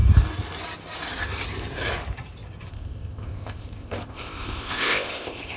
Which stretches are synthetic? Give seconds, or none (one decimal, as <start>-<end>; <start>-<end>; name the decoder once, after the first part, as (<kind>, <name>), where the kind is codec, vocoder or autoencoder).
2.7-5.6 (codec, ZipCodec)